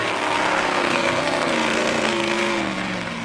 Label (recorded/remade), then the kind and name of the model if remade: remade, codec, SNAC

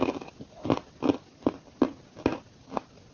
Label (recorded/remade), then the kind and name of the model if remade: recorded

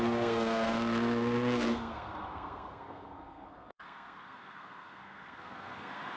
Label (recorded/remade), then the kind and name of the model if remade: remade, codec, SNAC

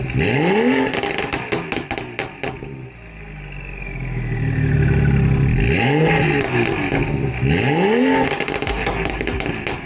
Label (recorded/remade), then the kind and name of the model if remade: recorded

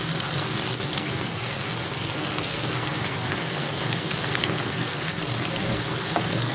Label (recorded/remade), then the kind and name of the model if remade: remade, codec, SNAC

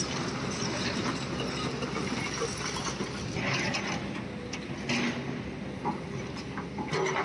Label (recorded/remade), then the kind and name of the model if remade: recorded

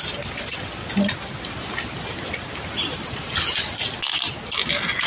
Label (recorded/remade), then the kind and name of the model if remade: recorded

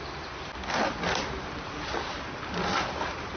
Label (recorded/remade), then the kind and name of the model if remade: recorded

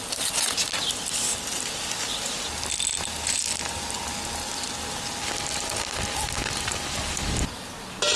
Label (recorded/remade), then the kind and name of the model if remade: recorded